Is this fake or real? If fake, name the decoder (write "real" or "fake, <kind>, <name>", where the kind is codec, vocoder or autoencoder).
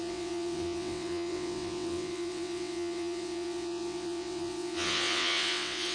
fake, vocoder, WaveNeXt